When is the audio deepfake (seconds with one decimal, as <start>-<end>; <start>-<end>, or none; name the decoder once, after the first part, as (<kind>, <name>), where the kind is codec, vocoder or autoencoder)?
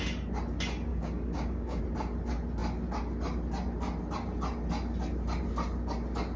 0.9-1.8 (codec, DAC)